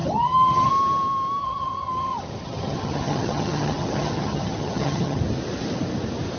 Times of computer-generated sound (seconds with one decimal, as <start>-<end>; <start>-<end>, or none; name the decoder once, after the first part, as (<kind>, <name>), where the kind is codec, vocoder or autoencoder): 0.0-0.7 (vocoder, HiFi-GAN); 1.4-5.2

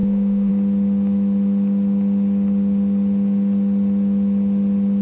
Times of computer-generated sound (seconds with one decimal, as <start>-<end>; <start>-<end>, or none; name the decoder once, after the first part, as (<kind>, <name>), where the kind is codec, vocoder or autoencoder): 0.0-0.5 (autoencoder, DAC-VAE)